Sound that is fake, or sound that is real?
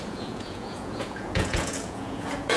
fake